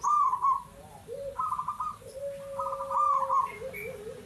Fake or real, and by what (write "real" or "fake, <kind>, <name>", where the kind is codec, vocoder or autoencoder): real